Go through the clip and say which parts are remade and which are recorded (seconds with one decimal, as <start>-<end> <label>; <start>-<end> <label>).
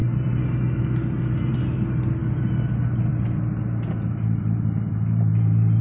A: 0.0-5.8 recorded